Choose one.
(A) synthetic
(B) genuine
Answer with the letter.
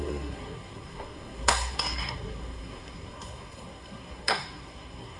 A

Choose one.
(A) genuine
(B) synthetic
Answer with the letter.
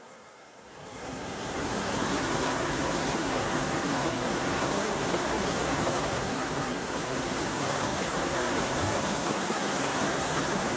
B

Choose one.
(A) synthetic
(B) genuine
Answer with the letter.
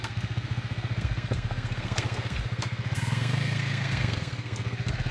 A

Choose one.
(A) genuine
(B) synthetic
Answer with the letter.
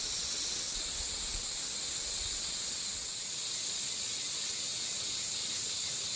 B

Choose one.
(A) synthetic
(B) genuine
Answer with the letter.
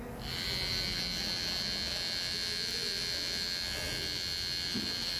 B